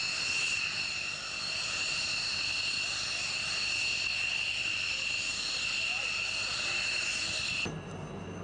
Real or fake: real